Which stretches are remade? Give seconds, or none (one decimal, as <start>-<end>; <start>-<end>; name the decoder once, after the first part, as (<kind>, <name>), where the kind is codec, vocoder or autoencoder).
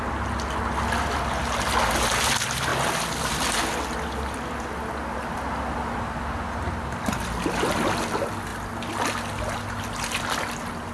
none